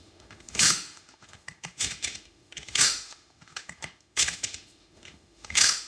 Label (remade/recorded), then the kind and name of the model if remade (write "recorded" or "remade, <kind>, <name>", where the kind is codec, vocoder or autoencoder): remade, autoencoder, DAC-VAE